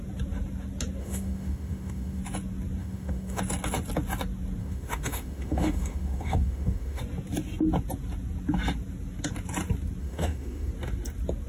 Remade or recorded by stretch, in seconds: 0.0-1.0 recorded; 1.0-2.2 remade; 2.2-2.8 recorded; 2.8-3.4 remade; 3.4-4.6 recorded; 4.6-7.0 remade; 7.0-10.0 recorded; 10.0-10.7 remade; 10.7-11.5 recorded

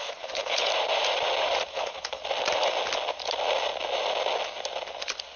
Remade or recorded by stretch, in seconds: 0.0-0.7 remade; 0.7-1.7 recorded; 1.7-2.2 remade; 2.2-5.4 recorded

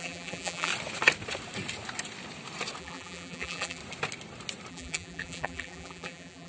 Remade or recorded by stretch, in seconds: 0.0-0.7 remade; 0.7-2.8 recorded; 2.8-3.8 remade; 3.8-4.7 recorded; 4.7-6.5 remade